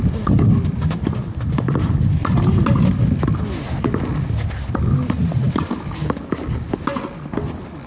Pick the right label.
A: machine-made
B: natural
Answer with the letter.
B